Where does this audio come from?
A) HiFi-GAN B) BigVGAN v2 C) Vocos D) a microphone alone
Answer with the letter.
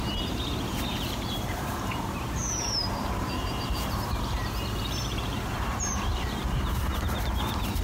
B